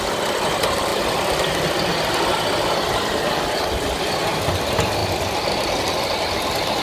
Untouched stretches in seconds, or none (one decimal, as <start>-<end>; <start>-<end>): 0.0-6.8